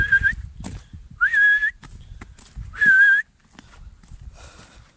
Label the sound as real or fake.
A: real